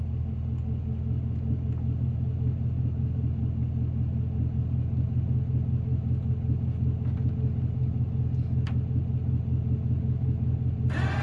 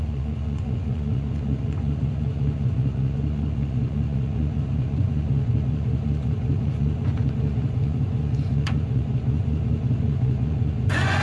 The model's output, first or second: second